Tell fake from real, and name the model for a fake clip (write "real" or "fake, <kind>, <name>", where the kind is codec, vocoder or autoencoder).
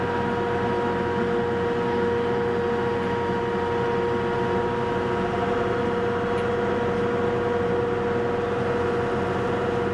real